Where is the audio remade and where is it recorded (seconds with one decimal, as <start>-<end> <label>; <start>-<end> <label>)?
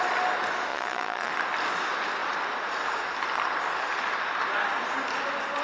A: 0.0-0.7 recorded; 0.7-1.3 remade; 1.3-5.6 recorded